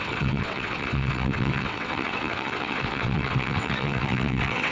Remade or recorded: remade